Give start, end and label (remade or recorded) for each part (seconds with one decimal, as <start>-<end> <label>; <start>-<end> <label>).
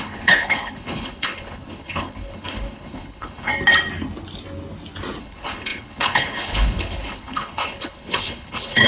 0.0-3.5 remade; 3.5-5.2 recorded; 5.2-8.9 remade